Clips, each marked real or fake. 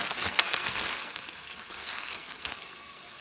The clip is fake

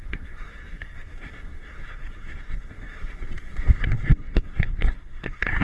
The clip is fake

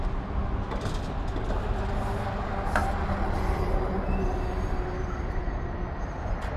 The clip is real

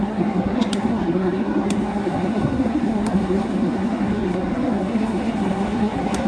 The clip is fake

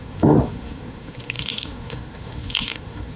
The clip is fake